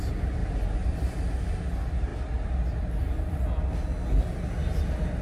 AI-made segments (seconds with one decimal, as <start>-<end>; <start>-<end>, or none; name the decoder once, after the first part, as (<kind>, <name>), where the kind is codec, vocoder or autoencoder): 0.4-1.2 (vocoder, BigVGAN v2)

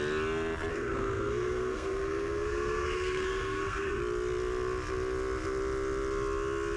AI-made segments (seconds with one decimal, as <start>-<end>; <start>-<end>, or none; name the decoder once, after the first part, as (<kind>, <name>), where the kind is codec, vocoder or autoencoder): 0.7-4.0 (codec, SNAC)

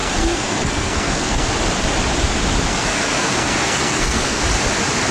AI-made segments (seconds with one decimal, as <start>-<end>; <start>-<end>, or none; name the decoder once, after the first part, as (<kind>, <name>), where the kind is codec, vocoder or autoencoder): 0.0-1.5 (codec, SNAC); 2.7-4.4

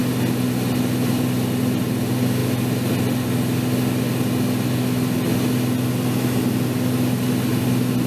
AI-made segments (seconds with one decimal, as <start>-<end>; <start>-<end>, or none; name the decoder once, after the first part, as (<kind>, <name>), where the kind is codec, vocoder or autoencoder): none